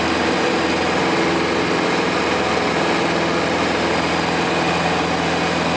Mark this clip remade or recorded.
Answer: recorded